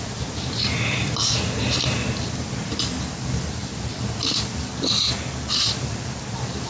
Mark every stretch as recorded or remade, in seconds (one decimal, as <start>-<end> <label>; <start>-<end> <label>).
0.0-6.7 recorded